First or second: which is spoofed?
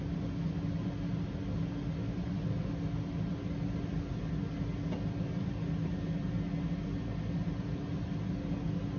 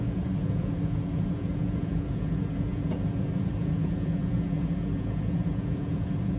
second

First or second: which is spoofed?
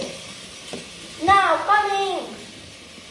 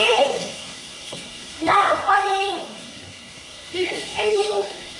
second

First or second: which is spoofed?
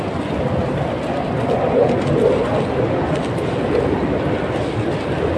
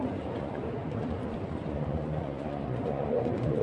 second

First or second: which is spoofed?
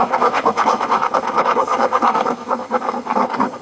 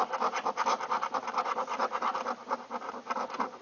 first